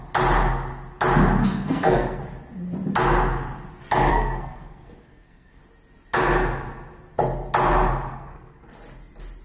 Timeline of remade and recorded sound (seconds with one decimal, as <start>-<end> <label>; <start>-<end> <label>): 0.0-1.4 recorded; 1.4-2.2 remade; 2.2-4.1 recorded; 4.1-5.6 remade; 5.6-8.1 recorded; 8.1-8.6 remade; 8.6-9.4 recorded